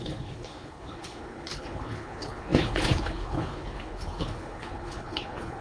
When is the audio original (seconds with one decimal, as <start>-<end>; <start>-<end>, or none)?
none